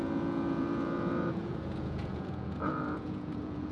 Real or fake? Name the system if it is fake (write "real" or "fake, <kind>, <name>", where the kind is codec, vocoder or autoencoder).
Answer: fake, vocoder, Vocos